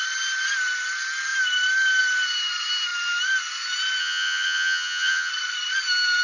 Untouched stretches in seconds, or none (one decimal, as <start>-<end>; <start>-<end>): 0.0-4.0; 5.3-6.2

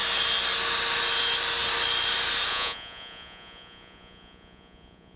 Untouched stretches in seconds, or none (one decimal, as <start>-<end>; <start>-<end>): 0.0-2.5

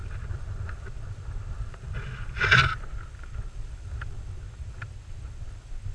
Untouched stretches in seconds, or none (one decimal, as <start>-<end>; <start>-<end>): 0.0-5.9

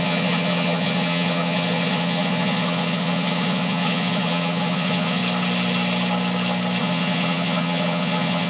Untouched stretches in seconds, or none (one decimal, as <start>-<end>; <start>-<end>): 5.2-6.8

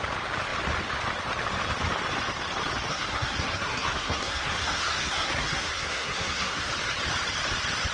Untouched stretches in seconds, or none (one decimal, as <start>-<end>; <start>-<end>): 0.0-2.9; 6.7-7.9

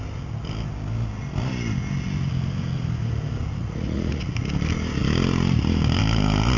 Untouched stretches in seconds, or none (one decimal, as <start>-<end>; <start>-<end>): 0.0-3.6; 4.3-6.6

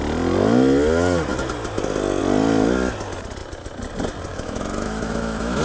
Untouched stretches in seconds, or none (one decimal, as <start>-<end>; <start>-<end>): 0.0-4.3

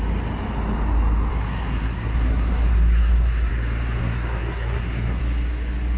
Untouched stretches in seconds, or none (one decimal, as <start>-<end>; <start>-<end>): 0.0-1.3; 3.5-4.0; 5.2-6.0